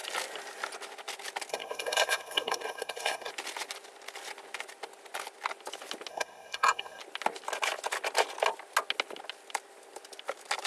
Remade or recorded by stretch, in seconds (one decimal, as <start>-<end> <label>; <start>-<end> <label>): 0.0-1.5 recorded; 1.5-3.3 remade; 3.3-6.1 recorded; 6.1-7.0 remade; 7.0-10.7 recorded